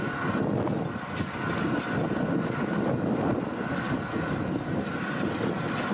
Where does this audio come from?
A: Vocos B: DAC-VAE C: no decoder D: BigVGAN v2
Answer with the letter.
C